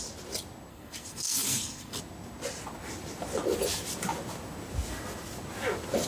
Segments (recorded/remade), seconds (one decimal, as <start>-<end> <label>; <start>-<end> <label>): 0.0-0.7 recorded; 0.7-2.0 remade; 2.0-6.1 recorded

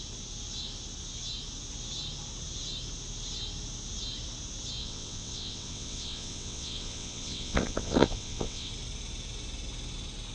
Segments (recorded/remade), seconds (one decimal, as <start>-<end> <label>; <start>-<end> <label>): 0.0-4.8 recorded; 4.8-8.7 remade; 8.7-10.3 recorded

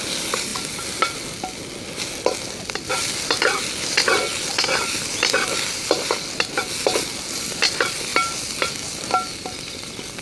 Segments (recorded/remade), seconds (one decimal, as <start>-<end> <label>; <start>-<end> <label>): 0.0-10.2 recorded